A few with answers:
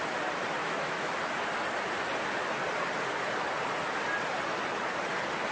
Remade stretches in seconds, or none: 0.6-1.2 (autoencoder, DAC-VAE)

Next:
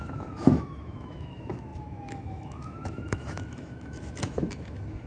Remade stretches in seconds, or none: 0.0-5.1 (autoencoder, DAC-VAE)

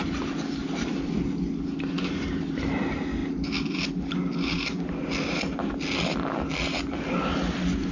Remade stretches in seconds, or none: none